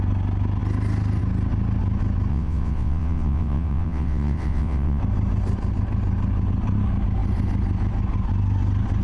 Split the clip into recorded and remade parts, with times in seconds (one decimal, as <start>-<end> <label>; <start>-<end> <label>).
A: 0.0-2.3 recorded; 2.3-5.0 remade; 5.0-9.0 recorded